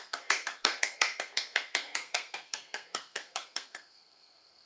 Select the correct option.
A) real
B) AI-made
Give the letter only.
B